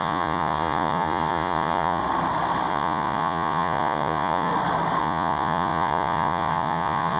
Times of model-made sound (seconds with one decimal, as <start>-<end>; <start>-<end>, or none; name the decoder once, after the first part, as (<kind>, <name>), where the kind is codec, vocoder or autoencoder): 0.0-2.0 (vocoder, Vocos); 2.7-4.5; 5.0-7.2